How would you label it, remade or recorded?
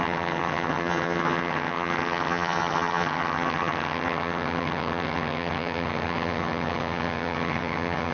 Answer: remade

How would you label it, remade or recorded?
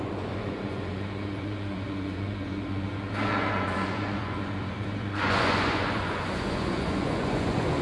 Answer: remade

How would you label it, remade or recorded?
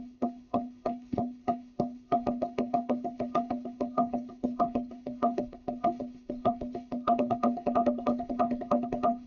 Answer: remade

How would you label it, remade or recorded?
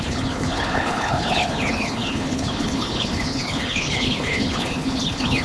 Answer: remade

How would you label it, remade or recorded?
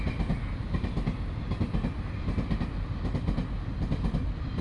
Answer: recorded